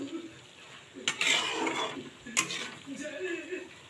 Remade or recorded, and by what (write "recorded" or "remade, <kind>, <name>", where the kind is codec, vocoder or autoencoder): recorded